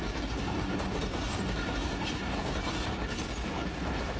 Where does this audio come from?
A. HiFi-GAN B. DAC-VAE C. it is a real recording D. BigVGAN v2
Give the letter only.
C